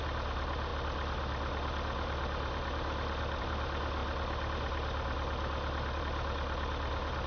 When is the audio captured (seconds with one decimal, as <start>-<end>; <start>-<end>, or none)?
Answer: 0.0-7.3